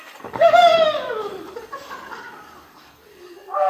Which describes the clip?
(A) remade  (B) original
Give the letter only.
A